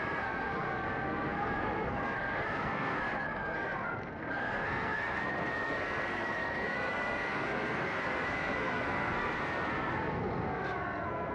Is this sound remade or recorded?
remade